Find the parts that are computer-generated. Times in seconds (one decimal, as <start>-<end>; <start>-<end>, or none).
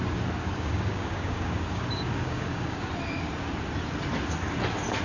0.4-2.9